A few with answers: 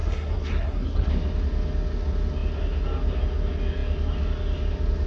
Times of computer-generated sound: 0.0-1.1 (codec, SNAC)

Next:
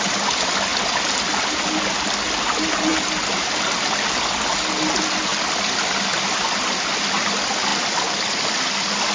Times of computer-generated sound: none

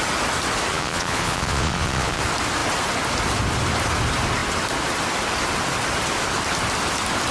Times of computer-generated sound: 0.7-2.2 (vocoder, Vocos)

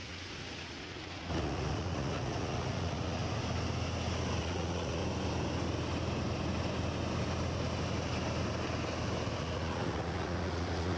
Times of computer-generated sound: 0.0-3.2 (vocoder, Vocos); 4.4-5.0; 9.4-11.0

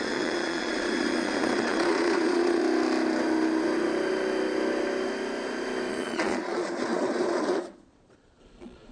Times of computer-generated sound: 0.0-2.6 (vocoder, Vocos); 5.9-8.9

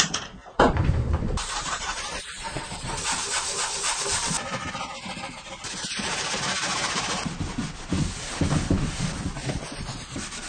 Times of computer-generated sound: 0.4-4.7 (vocoder, BigVGAN v2)